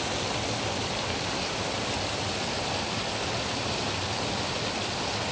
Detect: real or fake real